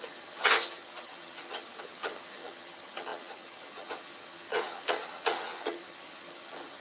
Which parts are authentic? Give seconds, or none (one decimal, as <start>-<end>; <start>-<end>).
none